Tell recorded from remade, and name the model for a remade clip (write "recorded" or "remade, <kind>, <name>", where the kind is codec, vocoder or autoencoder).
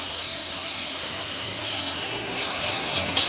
remade, codec, SNAC